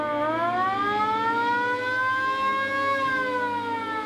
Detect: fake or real real